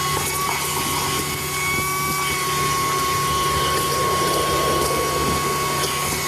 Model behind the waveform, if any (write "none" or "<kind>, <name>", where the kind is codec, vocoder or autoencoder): none